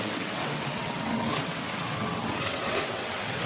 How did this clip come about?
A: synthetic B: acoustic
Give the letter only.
A